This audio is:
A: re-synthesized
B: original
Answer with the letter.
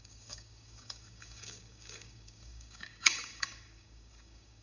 A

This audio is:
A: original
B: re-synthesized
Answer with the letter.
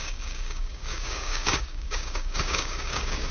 B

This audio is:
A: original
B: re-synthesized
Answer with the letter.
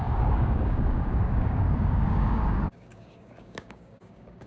B